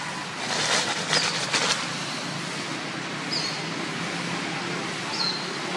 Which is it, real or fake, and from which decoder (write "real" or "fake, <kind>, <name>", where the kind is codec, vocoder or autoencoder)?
real